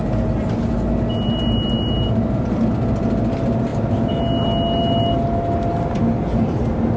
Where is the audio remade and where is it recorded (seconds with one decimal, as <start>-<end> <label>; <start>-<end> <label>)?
0.0-7.0 recorded